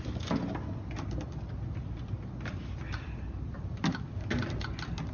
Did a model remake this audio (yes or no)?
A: no